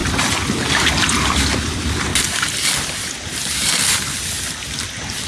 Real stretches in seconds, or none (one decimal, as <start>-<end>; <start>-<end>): 0.0-1.6; 2.1-5.3